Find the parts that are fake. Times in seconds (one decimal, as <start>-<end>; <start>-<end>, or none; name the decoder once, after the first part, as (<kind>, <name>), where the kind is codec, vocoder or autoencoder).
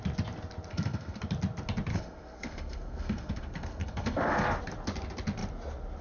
0.7-1.2 (codec, SNAC); 1.9-4.6